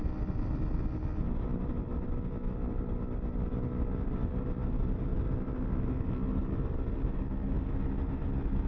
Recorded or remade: recorded